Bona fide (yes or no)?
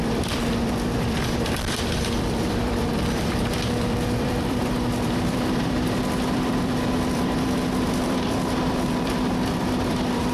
no